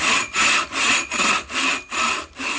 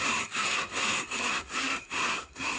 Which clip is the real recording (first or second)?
first